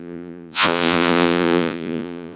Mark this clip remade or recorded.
remade